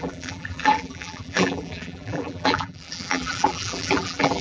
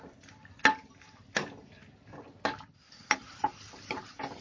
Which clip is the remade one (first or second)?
first